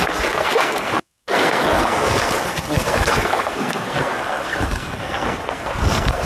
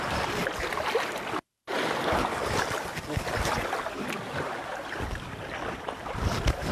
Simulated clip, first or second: first